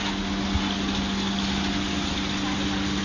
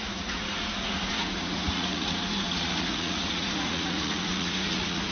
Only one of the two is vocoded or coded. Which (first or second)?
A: second